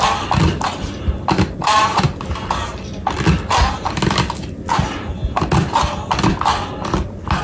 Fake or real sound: real